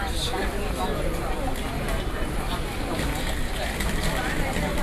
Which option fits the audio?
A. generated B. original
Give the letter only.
B